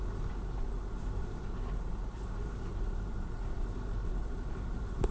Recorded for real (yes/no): no